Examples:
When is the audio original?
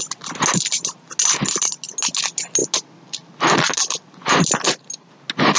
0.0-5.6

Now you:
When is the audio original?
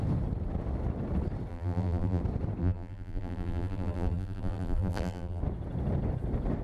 0.0-1.5; 2.2-2.6; 5.4-6.6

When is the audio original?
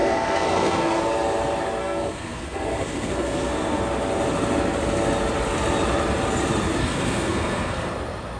1.0-1.8; 3.8-6.8; 7.9-8.4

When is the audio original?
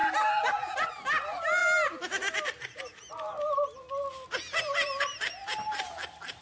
0.0-6.4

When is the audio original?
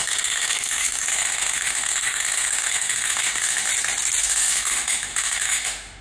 3.7-4.2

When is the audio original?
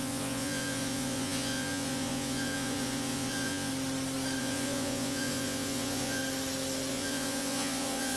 3.7-4.4; 6.2-6.9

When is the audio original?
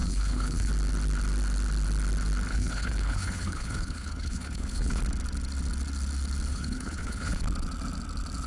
0.7-2.5; 5.0-6.5; 7.4-8.5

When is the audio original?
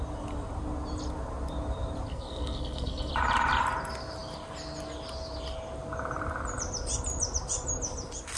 0.0-2.1; 3.1-8.4